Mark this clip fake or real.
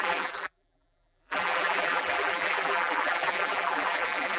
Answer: fake